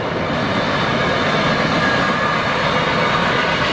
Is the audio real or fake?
real